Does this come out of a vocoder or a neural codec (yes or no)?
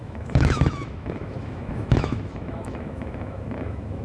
yes